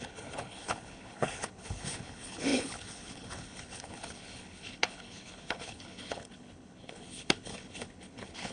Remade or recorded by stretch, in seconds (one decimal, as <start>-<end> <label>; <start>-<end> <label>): 0.0-8.5 remade